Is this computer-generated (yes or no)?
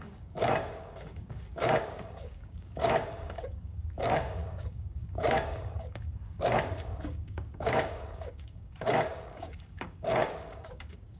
yes